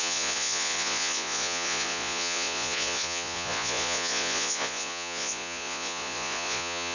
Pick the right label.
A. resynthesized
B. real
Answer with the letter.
A